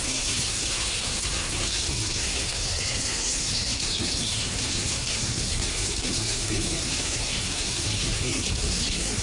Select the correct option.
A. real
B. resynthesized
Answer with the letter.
B